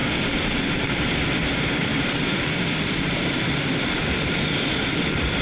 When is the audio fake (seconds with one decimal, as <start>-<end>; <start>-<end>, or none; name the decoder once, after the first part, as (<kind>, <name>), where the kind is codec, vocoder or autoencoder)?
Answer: 0.0-0.9 (vocoder, BigVGAN v2); 1.9-5.4